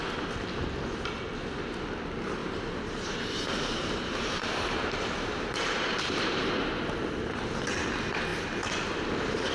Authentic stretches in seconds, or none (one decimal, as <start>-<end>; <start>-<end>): 0.0-2.4; 6.5-9.5